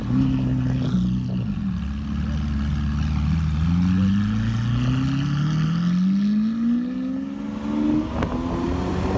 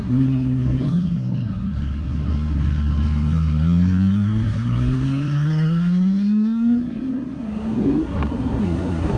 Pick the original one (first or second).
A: first